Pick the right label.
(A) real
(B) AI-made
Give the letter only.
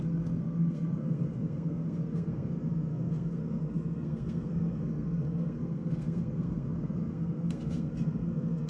B